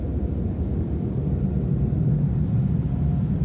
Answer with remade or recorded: recorded